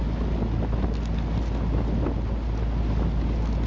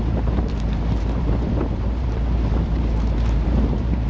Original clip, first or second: first